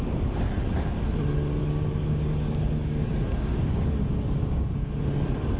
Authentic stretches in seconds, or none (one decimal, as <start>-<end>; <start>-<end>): 0.0-1.6; 5.0-5.6